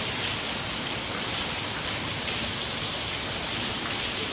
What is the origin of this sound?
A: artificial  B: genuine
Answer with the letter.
B